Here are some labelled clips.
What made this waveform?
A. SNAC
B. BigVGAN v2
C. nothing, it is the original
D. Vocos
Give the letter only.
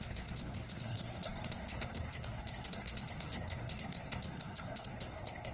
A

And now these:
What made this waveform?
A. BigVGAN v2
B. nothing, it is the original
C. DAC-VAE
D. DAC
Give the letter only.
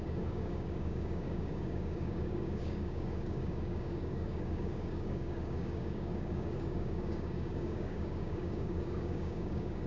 D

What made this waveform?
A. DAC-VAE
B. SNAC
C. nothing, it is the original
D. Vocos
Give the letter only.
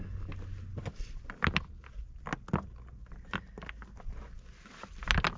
C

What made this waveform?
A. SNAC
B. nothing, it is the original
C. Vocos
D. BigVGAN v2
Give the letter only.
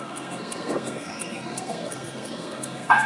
A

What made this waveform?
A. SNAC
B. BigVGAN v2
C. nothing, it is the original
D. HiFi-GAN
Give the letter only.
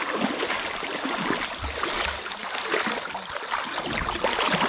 C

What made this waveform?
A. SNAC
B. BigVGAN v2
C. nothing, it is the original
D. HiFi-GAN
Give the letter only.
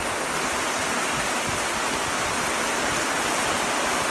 C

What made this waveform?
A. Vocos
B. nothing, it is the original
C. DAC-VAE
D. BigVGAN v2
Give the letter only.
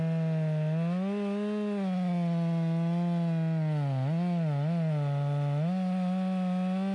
B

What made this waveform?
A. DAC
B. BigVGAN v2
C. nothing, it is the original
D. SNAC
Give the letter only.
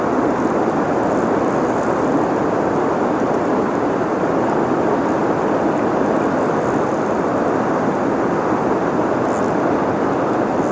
C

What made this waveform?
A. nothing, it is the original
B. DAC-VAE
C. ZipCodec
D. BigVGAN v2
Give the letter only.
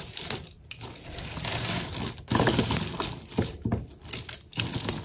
A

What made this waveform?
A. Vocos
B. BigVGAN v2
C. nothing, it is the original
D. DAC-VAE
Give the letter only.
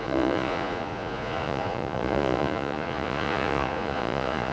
A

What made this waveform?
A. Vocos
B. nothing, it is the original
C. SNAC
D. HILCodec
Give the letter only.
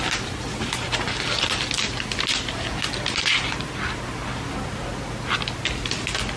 B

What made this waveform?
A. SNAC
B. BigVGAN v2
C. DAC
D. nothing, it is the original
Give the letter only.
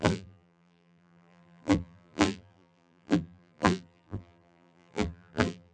B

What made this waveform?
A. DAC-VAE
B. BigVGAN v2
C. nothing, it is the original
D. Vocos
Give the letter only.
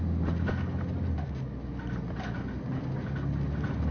C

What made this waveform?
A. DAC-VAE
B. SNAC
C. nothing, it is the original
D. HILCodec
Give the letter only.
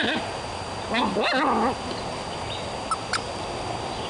C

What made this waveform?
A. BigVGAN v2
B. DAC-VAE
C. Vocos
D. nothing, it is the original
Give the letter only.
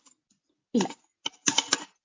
D